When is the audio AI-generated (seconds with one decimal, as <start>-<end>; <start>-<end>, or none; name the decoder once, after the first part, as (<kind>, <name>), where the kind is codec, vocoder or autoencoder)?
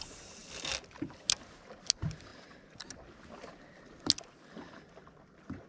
none